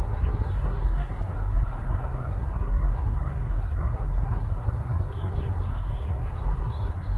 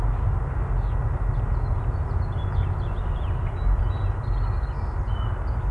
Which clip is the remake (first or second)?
first